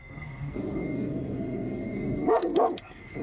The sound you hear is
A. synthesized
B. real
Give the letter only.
A